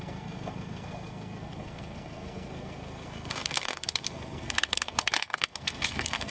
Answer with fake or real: fake